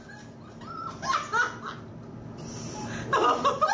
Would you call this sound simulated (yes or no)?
no